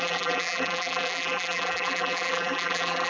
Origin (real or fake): fake